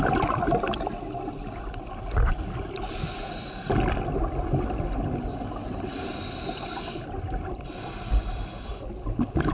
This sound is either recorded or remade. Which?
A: recorded